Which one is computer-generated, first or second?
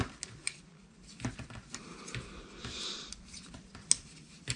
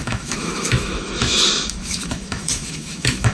second